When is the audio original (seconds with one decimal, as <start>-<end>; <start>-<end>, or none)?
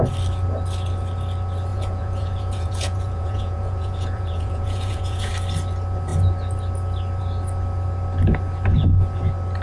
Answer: 0.0-1.7; 5.3-9.6